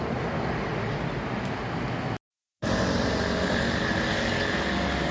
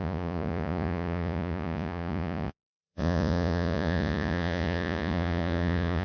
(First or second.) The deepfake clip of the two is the second